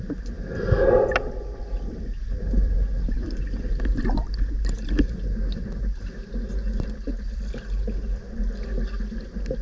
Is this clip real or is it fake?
real